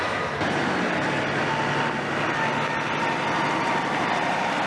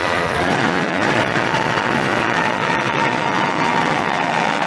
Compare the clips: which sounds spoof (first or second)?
second